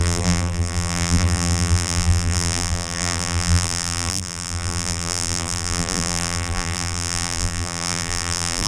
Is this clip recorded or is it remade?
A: remade